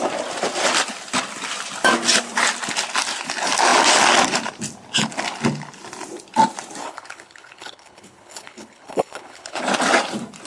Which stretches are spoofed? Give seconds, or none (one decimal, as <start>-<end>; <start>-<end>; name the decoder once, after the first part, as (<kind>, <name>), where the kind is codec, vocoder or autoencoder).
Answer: 6.8-9.6 (codec, HILCodec)